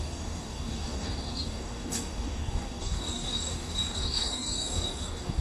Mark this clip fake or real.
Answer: fake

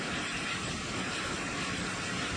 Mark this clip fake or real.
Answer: real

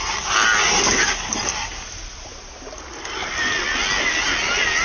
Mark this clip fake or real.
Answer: real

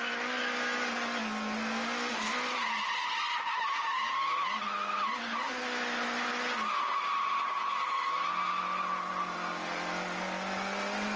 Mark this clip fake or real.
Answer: real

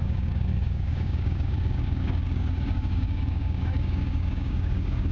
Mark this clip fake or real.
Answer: fake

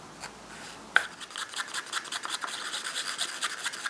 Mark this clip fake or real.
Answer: real